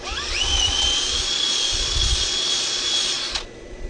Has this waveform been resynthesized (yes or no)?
yes